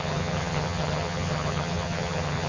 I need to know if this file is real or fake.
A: fake